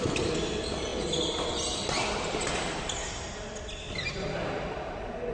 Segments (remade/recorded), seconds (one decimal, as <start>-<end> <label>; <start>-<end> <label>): 0.0-5.3 recorded